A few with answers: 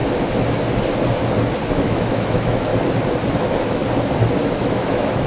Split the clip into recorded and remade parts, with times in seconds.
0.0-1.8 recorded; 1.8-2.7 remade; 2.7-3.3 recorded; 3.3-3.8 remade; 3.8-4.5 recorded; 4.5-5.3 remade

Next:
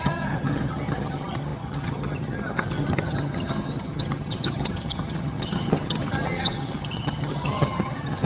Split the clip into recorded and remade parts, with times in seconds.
0.0-8.3 remade

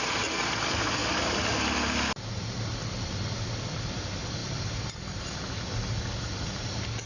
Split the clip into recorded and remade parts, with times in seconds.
0.0-7.1 recorded

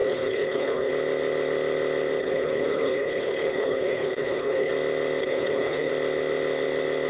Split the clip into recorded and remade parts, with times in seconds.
0.0-0.9 remade; 0.9-2.2 recorded; 2.2-4.7 remade; 4.7-5.2 recorded; 5.2-5.9 remade; 5.9-7.1 recorded

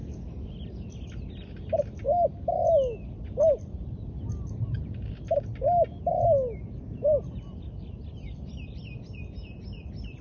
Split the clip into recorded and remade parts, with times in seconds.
0.0-10.2 recorded

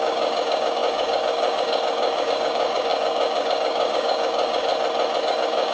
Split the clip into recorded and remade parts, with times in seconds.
0.0-4.7 remade; 4.7-5.2 recorded; 5.2-5.7 remade